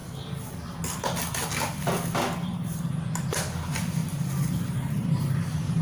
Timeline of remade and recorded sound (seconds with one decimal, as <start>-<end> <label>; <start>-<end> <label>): 0.0-2.4 recorded; 2.4-3.1 remade; 3.1-4.0 recorded; 4.0-5.8 remade